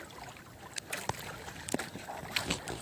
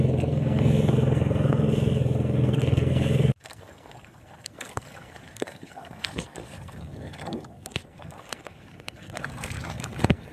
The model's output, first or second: second